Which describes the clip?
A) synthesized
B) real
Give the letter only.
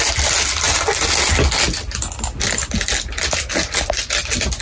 B